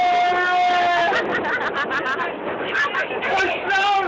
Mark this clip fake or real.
real